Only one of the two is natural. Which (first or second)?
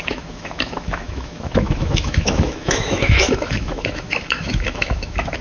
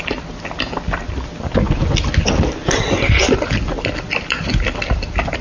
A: second